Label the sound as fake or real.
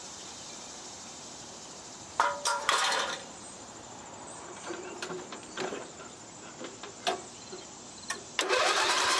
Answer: fake